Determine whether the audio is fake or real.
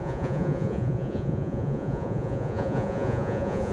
fake